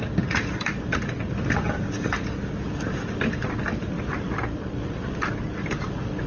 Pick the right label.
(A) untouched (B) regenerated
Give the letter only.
A